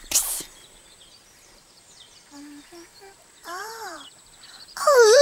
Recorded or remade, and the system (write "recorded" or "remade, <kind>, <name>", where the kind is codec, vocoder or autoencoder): remade, vocoder, BigVGAN v2